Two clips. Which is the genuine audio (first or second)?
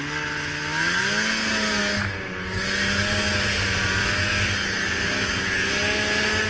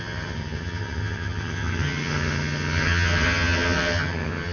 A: first